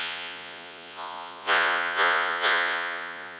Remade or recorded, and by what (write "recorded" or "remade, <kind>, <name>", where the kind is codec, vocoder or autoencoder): remade, vocoder, Vocos